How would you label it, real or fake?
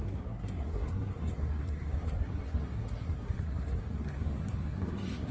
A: fake